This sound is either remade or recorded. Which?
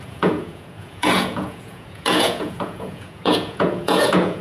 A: remade